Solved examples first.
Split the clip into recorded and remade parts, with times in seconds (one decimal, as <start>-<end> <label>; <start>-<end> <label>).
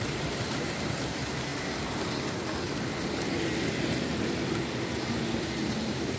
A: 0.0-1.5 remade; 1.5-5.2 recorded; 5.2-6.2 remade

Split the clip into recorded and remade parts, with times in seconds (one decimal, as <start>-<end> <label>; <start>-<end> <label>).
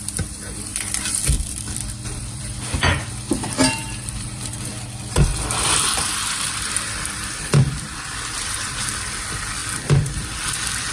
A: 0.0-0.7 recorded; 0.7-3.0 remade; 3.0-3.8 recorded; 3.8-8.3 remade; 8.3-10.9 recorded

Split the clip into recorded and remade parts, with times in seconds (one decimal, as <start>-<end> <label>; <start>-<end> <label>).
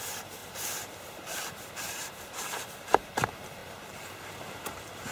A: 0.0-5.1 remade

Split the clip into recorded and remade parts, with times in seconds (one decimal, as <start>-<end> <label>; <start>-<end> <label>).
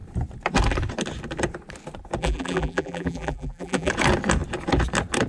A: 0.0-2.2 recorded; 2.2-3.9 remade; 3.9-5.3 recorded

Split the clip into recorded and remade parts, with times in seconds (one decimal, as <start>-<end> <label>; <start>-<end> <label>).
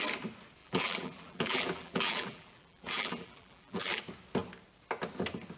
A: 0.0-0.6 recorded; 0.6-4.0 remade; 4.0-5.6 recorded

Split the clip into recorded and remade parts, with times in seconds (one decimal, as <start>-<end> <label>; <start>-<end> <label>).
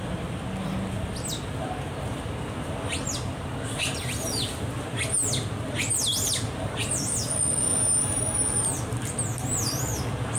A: 0.0-7.7 recorded; 7.7-8.2 remade; 8.2-10.4 recorded